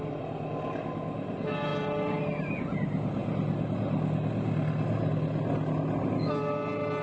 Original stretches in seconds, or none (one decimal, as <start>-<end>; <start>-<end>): 0.0-7.0